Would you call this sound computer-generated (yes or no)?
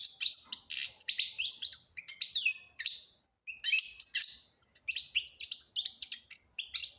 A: no